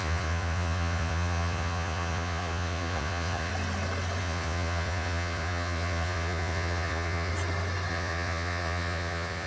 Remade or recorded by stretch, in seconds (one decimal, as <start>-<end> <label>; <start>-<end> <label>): 0.0-3.5 remade; 3.5-4.2 recorded; 4.2-7.3 remade; 7.3-7.9 recorded; 7.9-9.5 remade